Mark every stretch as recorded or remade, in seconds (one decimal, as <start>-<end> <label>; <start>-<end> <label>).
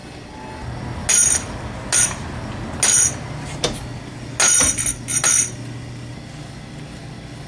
0.0-7.5 recorded